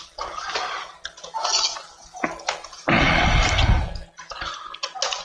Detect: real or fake real